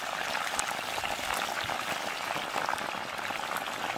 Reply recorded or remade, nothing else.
recorded